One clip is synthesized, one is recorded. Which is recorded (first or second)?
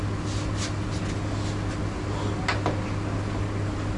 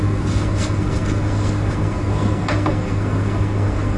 first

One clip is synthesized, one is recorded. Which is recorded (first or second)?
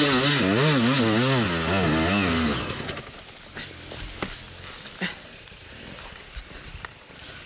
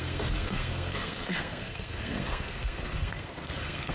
first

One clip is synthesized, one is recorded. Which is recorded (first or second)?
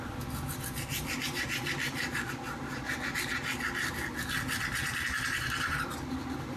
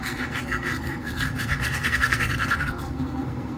first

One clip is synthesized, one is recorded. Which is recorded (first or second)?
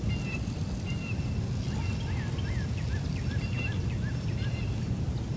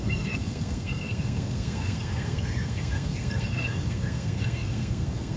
first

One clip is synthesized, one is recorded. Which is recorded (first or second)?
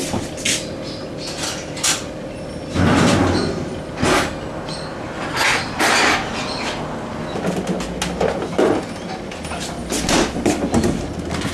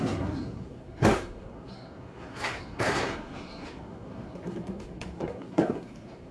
first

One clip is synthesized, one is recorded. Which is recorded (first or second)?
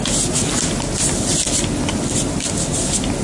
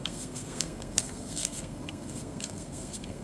first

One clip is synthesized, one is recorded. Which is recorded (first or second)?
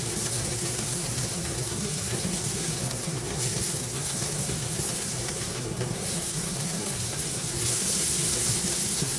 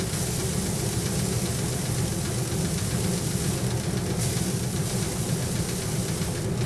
second